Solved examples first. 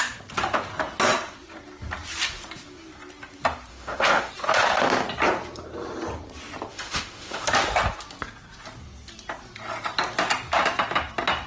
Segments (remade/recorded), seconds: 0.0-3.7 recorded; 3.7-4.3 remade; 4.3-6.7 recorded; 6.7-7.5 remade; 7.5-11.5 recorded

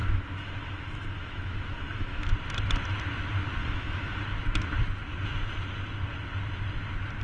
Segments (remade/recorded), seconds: 0.0-2.3 remade; 2.3-3.6 recorded; 3.6-4.2 remade; 4.2-7.2 recorded

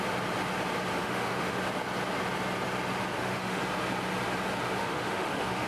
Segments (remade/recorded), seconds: 0.0-1.0 recorded; 1.0-1.6 remade; 1.6-3.1 recorded; 3.1-3.6 remade; 3.6-4.8 recorded; 4.8-5.7 remade

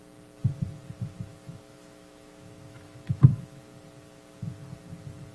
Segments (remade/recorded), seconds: 0.0-1.3 recorded; 1.3-3.6 remade; 3.6-5.3 recorded